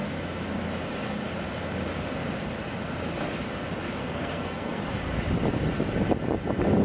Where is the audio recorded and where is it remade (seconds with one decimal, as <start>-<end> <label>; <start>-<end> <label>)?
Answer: 0.0-4.0 recorded; 4.0-4.8 remade; 4.8-6.8 recorded